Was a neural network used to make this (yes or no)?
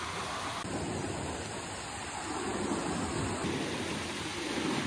no